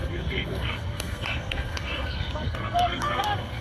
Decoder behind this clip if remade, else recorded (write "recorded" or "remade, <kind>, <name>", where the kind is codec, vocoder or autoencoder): remade, codec, SNAC